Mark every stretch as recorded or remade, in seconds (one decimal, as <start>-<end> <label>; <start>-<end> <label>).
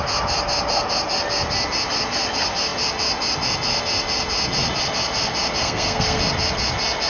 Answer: 0.0-5.6 recorded; 5.6-6.2 remade; 6.2-7.1 recorded